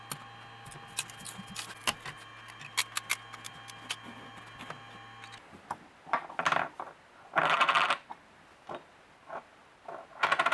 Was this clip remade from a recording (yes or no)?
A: no